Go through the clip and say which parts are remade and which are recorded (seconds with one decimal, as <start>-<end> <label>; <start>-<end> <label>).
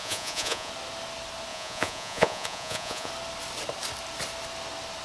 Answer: 0.0-0.7 remade; 0.7-1.5 recorded; 1.5-3.1 remade; 3.1-5.0 recorded